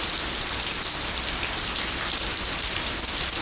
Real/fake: real